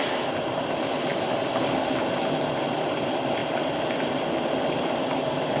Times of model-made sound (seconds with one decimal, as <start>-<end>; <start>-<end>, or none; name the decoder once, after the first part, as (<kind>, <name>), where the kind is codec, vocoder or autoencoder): none